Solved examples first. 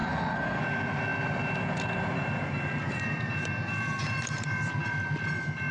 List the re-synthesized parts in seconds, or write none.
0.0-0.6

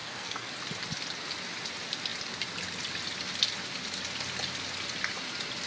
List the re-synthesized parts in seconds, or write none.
0.0-0.5

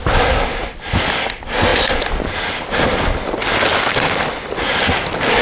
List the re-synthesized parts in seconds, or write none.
none

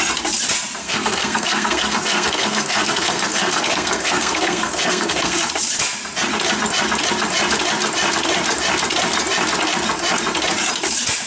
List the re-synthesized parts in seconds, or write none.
0.8-5.5